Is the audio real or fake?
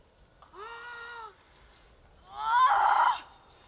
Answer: real